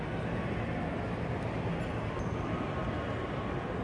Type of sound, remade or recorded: recorded